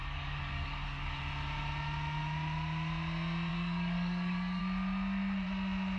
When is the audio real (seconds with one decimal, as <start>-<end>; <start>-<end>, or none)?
1.2-3.5; 4.6-6.0